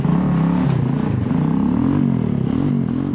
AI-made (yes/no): no